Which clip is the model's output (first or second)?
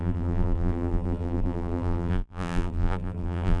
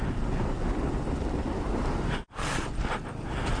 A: first